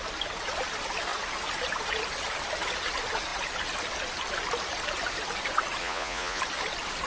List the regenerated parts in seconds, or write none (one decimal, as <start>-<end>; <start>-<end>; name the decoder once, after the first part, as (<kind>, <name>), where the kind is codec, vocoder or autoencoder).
5.8-6.4 (vocoder, Vocos)